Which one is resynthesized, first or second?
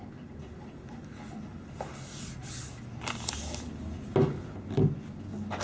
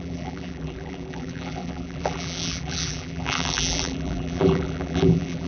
second